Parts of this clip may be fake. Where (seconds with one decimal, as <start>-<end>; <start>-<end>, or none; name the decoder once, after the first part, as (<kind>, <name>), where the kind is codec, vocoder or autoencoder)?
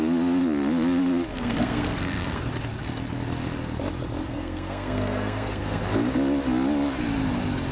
1.3-2.5 (codec, SNAC); 4.2-5.8